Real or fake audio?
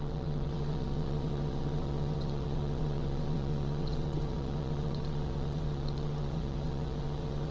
fake